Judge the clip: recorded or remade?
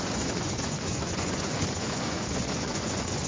remade